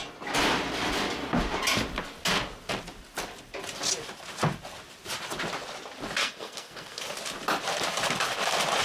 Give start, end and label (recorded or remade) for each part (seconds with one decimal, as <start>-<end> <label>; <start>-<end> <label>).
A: 0.0-6.2 recorded; 6.2-7.0 remade; 7.0-8.8 recorded